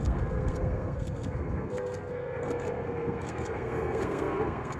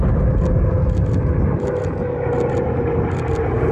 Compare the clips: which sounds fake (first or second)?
first